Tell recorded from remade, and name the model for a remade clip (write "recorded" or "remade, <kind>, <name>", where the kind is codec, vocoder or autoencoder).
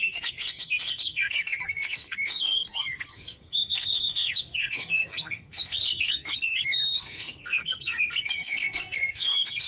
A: remade, codec, SNAC